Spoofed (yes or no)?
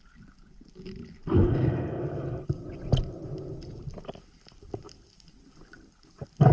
no